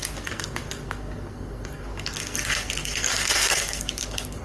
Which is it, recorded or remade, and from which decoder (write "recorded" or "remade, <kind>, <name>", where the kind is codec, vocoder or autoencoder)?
remade, codec, SNAC